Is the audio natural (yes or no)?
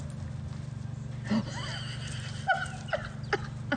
yes